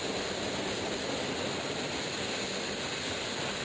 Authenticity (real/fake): real